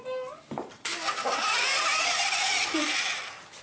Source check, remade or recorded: recorded